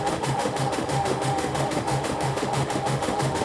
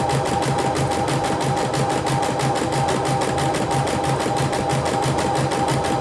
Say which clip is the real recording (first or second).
second